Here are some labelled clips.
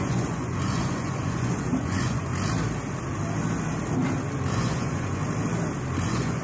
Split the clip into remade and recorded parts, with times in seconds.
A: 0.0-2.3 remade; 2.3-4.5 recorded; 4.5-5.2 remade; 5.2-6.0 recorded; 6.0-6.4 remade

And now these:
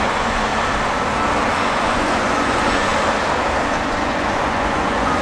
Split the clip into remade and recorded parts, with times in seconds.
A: 0.0-0.5 remade; 0.5-1.5 recorded; 1.5-2.9 remade; 2.9-3.7 recorded; 3.7-5.2 remade

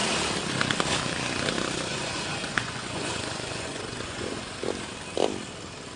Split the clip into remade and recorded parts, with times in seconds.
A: 0.0-1.9 recorded; 1.9-4.5 remade; 4.5-6.0 recorded

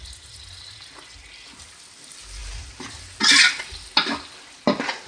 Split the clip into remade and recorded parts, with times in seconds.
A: 0.0-5.1 recorded

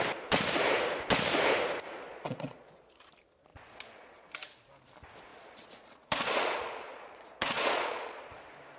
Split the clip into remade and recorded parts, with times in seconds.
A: 0.0-2.1 recorded; 2.1-2.9 remade; 2.9-3.5 recorded; 3.5-4.3 remade; 4.3-5.3 recorded; 5.3-8.4 remade; 8.4-8.8 recorded

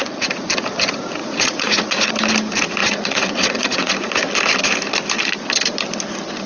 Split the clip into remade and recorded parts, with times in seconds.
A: 0.0-0.5 remade; 0.5-1.2 recorded; 1.2-2.1 remade; 2.1-2.8 recorded; 2.8-4.1 remade; 4.1-6.5 recorded

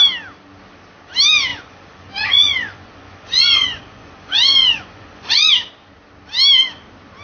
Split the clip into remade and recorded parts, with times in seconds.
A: 0.0-1.5 recorded; 1.5-5.5 remade; 5.5-7.2 recorded